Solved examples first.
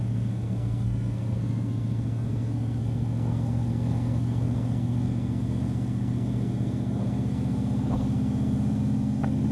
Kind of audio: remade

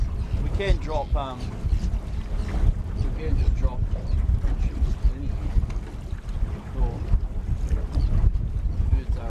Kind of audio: recorded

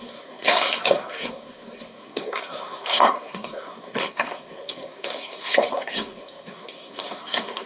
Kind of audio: remade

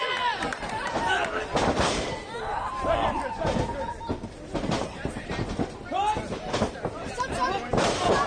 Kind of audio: recorded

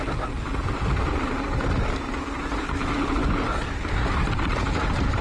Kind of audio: recorded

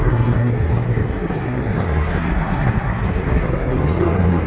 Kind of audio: remade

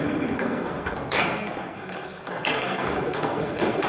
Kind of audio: remade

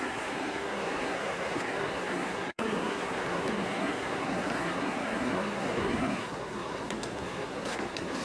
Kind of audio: remade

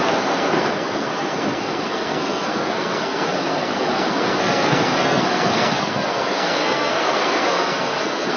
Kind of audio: remade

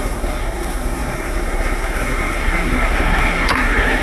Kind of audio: remade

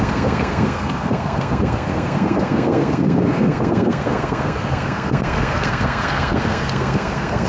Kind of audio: remade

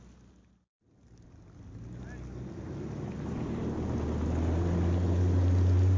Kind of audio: recorded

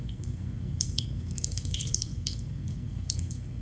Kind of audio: remade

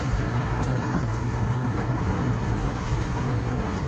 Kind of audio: remade